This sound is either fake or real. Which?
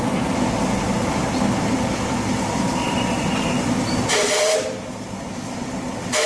real